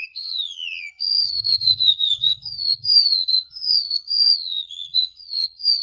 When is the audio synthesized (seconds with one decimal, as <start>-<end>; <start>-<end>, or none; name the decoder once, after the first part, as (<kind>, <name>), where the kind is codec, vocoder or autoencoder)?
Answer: 0.0-5.8 (vocoder, Vocos)